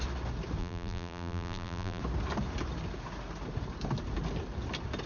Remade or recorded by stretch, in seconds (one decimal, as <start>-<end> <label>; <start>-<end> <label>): 0.0-0.6 recorded; 0.6-2.0 remade; 2.0-5.1 recorded